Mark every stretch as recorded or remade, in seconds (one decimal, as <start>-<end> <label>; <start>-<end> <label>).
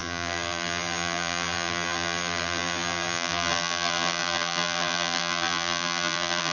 0.0-6.5 remade